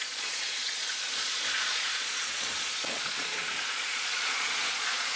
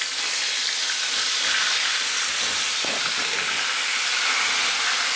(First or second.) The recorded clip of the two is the second